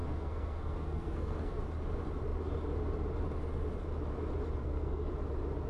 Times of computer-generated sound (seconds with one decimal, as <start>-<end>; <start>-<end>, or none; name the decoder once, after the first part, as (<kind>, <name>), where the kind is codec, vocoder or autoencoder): 0.0-1.6 (codec, SNAC); 4.6-5.1